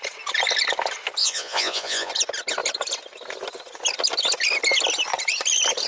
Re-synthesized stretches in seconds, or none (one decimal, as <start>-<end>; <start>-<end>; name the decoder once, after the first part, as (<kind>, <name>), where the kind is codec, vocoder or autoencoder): 1.2-2.1 (vocoder, Vocos)